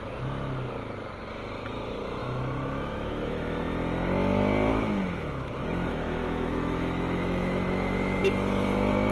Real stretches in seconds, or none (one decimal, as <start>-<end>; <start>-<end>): 0.0-2.2; 3.6-4.7; 8.2-9.1

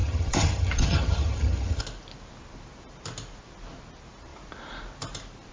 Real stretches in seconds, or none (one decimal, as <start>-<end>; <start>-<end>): 1.8-5.5

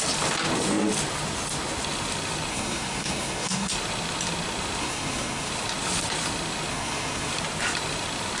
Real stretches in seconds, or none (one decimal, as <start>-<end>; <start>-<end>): 0.0-2.5; 3.7-4.8; 5.5-6.7; 7.3-8.4

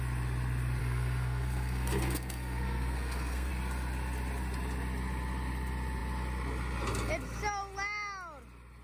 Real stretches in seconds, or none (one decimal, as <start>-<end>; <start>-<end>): 0.0-0.8; 3.5-8.8